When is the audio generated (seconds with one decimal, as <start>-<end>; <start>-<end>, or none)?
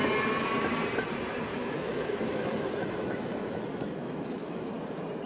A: 1.5-4.7